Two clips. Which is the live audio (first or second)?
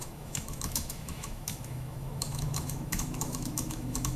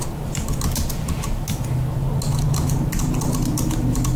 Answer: second